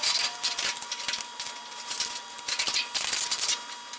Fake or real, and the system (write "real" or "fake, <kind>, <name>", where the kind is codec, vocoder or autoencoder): real